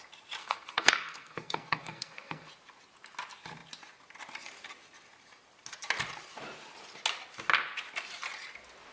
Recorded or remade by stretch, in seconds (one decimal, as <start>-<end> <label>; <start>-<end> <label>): 0.0-0.4 recorded; 0.4-2.5 remade; 2.5-8.9 recorded